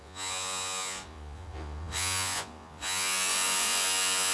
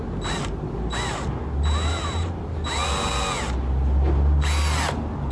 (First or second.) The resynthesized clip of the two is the first